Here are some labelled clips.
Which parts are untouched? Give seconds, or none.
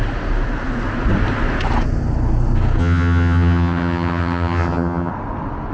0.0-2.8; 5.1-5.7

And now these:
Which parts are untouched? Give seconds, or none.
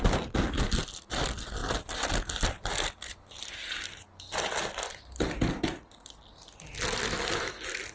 0.0-7.9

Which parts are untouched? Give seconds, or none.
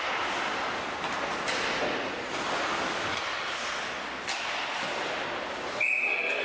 0.0-6.4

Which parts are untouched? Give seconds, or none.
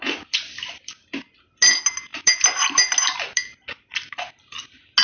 0.0-5.0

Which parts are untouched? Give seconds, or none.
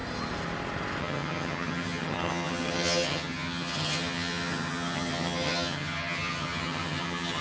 0.0-1.0